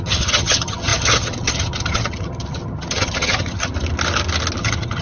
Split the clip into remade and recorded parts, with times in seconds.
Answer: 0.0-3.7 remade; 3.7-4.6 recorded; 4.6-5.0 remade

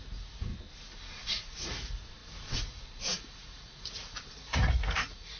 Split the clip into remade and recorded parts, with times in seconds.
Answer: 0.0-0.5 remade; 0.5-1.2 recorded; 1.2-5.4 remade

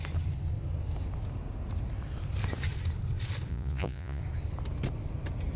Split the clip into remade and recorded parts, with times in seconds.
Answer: 0.0-3.5 recorded; 3.5-4.2 remade; 4.2-5.6 recorded

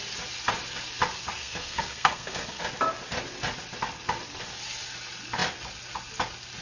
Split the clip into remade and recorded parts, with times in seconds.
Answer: 0.0-1.4 recorded; 1.4-2.6 remade; 2.6-6.6 recorded